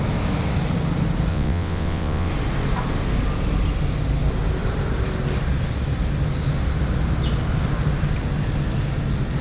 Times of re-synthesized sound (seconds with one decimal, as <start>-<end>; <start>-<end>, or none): 1.3-2.3